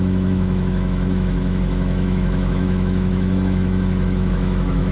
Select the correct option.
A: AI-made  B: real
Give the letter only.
A